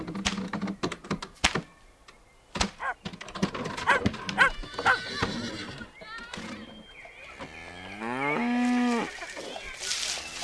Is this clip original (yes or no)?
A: yes